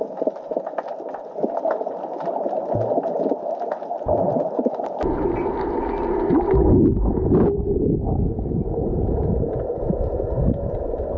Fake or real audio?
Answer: real